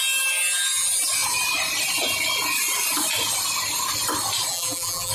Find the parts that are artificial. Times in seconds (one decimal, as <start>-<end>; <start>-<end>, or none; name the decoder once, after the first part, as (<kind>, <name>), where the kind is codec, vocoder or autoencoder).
4.5-5.1 (vocoder, BigVGAN v2)